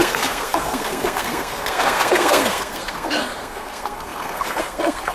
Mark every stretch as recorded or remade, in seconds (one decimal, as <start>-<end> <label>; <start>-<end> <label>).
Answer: 0.0-5.1 remade